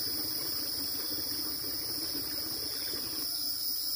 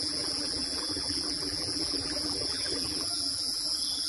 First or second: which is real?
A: first